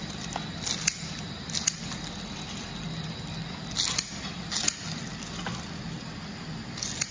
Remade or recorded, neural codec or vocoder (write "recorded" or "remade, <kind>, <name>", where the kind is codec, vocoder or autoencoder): recorded